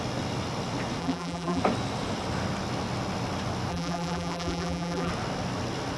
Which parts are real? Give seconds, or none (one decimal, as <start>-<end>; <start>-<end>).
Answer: 0.0-1.0; 1.6-3.7; 5.1-6.0